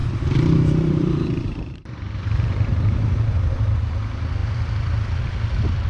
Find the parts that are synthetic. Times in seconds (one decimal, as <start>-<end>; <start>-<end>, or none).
0.0-3.5

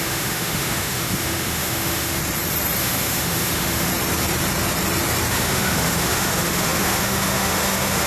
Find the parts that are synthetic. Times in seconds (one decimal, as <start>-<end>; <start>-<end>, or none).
0.0-2.2; 2.8-3.9; 5.3-8.1

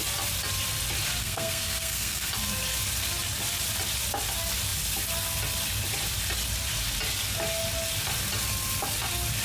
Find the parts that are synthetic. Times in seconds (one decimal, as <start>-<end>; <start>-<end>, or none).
1.2-2.3

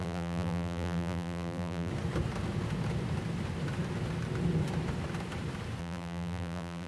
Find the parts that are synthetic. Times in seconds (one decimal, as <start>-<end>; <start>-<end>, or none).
0.0-1.9; 5.8-6.9

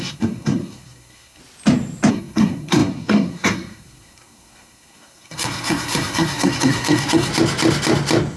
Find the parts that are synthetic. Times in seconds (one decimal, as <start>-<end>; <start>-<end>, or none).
0.0-1.4; 2.1-7.3

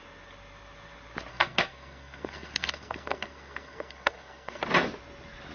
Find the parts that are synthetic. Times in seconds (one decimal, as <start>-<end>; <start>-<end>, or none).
1.3-4.6

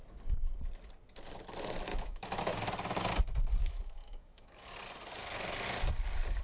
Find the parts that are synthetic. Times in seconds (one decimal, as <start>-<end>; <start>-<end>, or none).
1.9-2.4; 3.6-4.5

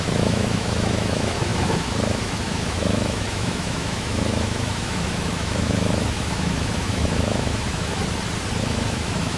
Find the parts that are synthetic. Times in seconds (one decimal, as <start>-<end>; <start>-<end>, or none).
0.0-8.0; 8.6-9.4